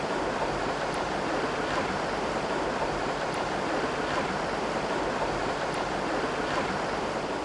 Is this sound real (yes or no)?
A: yes